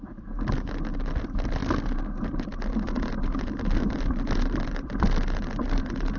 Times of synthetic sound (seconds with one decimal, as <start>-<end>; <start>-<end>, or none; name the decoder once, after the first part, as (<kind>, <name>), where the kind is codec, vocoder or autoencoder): none

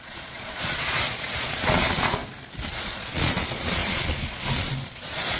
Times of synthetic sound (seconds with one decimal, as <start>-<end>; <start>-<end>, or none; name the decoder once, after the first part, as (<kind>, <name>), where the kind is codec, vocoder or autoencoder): 0.0-2.2 (vocoder, Vocos); 2.7-5.4

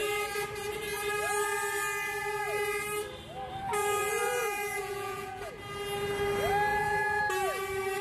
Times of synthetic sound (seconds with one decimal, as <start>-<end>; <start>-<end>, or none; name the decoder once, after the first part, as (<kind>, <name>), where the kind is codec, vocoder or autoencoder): 3.8-5.5 (vocoder, Vocos); 6.7-7.2

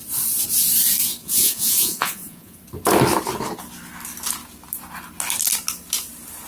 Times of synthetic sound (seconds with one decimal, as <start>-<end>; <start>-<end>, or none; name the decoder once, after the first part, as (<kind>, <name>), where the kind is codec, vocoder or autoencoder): 1.2-2.6 (vocoder, Vocos)

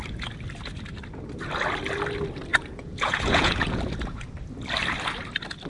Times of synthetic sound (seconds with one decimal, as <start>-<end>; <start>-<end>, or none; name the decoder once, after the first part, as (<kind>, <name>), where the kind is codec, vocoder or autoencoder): 2.5-3.8 (vocoder, Vocos)

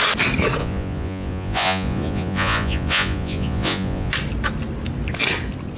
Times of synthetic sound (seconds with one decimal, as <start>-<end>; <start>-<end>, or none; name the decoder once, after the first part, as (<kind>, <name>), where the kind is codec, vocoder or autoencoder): 0.6-4.1 (vocoder, Vocos)

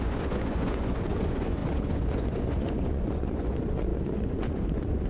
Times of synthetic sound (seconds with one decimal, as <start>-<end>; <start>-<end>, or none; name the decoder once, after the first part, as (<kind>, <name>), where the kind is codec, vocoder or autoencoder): 0.0-5.1 (vocoder, Vocos)

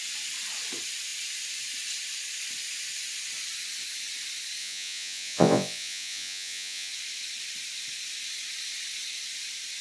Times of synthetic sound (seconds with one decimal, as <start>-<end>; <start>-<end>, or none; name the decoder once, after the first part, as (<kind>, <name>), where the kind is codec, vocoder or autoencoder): 4.6-6.9 (vocoder, Vocos)